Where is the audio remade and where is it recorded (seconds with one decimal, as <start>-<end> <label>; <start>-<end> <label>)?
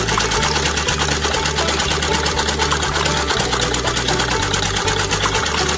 0.0-5.8 recorded